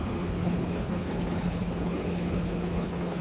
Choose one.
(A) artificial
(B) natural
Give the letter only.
A